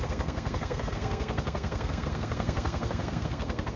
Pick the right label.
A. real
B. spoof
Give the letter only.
B